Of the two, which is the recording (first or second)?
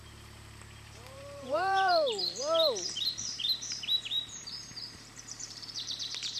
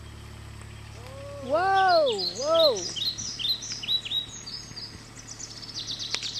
second